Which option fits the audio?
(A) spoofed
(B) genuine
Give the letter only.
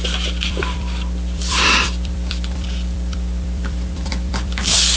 A